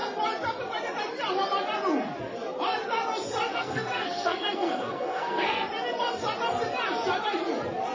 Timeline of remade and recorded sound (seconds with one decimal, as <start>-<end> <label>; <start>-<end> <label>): 0.0-3.5 recorded; 3.5-5.7 remade; 5.7-7.9 recorded